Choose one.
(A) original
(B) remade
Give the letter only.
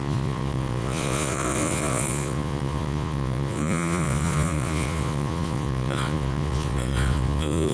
B